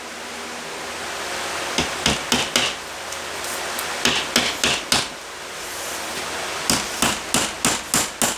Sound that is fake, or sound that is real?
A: real